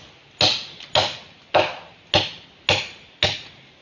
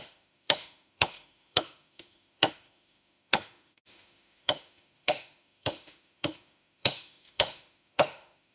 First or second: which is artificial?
second